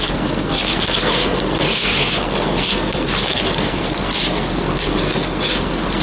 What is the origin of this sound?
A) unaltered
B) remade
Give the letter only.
B